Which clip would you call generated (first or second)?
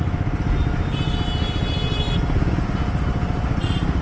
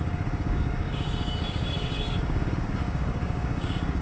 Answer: second